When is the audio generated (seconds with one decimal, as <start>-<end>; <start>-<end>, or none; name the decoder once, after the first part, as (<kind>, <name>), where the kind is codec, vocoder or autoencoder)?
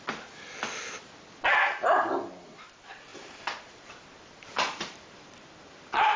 3.1-6.2 (vocoder, BigVGAN v2)